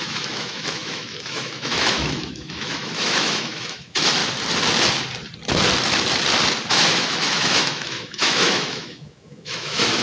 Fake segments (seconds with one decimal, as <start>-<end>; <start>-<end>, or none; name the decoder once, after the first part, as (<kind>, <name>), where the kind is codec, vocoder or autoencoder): 0.0-4.2 (autoencoder, DAC-VAE); 6.7-10.0